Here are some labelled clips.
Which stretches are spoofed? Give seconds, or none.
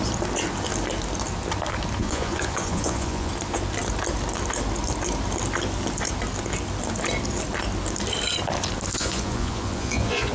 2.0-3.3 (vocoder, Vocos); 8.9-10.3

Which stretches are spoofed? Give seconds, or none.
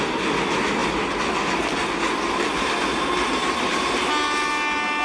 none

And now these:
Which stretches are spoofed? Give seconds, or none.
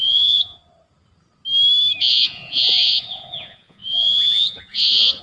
0.0-0.6 (vocoder, Vocos); 2.0-5.2